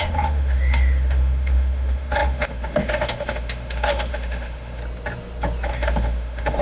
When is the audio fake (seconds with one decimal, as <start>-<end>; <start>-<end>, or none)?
0.0-4.8; 5.7-6.6